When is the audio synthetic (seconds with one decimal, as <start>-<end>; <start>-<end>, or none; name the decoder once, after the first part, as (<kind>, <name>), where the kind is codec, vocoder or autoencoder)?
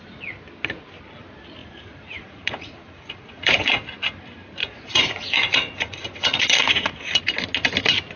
1.6-3.8 (vocoder, Vocos); 4.6-7.2